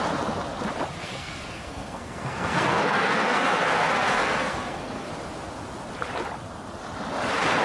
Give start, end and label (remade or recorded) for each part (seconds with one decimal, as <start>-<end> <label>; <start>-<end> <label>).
0.0-1.0 recorded; 1.0-5.1 remade; 5.1-7.6 recorded